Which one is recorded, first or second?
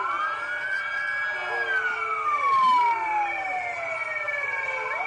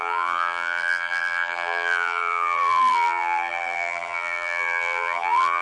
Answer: first